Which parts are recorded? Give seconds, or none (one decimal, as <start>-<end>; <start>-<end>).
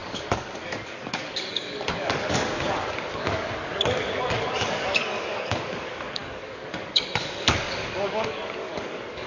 none